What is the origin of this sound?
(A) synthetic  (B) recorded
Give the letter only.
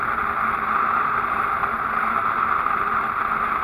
B